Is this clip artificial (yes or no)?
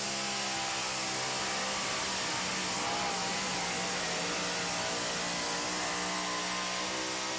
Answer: no